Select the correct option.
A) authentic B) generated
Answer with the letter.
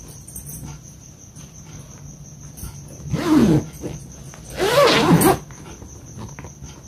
A